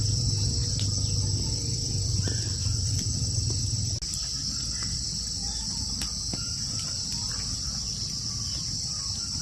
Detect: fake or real real